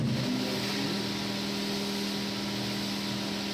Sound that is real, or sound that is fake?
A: real